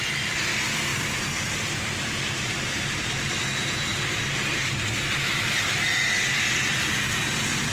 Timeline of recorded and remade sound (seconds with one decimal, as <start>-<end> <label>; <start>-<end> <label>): 0.0-0.9 recorded; 0.9-3.2 remade; 3.2-3.9 recorded; 3.9-4.7 remade; 4.7-6.7 recorded; 6.7-7.7 remade